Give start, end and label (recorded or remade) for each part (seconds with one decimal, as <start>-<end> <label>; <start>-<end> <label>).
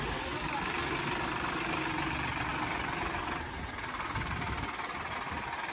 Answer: 0.0-5.7 recorded